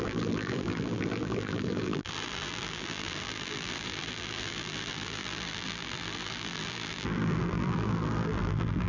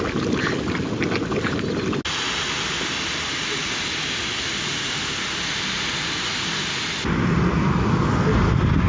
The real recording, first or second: second